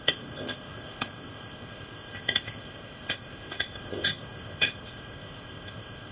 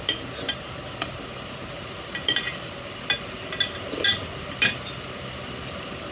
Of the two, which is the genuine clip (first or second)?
second